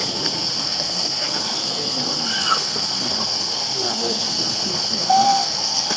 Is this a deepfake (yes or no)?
yes